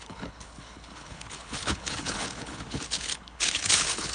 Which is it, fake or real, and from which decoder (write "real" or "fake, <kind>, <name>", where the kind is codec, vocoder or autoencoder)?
fake, codec, HILCodec